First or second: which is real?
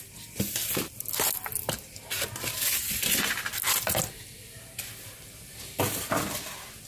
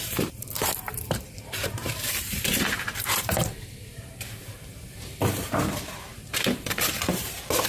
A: first